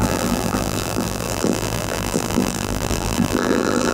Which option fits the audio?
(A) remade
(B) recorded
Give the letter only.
A